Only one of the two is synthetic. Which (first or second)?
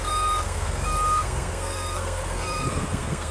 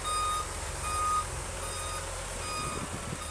first